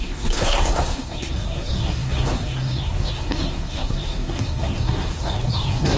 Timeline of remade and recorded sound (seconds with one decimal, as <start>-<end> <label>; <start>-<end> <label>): 0.0-6.0 remade